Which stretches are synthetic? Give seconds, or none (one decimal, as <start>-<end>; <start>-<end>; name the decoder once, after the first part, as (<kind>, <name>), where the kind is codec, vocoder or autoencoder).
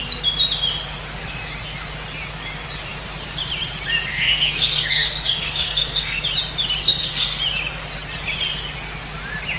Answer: 4.1-6.2 (codec, SNAC); 6.8-7.4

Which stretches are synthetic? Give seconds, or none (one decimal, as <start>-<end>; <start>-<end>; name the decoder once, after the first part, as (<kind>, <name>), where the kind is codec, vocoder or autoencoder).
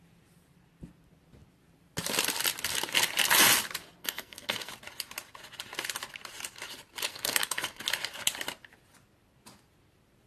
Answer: 4.0-4.7 (codec, SNAC); 7.1-7.8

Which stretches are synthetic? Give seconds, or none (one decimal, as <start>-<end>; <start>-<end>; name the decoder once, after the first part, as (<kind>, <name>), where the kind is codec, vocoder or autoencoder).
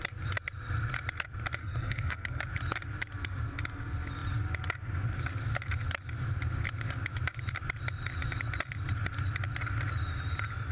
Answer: 1.6-2.4 (codec, SNAC)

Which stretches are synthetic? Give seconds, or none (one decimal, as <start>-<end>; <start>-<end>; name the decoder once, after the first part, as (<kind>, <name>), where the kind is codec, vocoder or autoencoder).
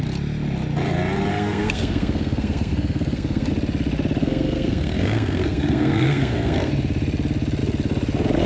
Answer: 1.3-3.5 (codec, SNAC); 4.2-6.7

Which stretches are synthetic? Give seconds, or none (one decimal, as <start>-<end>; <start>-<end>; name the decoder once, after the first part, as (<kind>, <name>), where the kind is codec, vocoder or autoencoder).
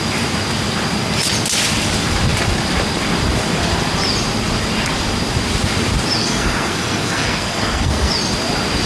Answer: 6.2-8.1 (codec, SNAC)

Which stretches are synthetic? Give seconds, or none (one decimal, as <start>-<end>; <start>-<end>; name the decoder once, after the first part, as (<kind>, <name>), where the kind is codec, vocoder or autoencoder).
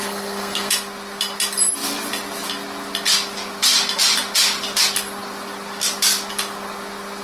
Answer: 0.0-0.7 (codec, SNAC)